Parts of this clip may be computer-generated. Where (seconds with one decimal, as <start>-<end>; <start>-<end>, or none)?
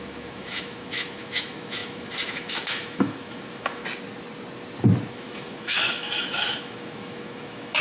0.0-3.8; 5.1-7.8